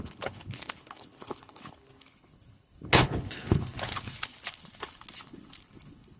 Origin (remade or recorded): remade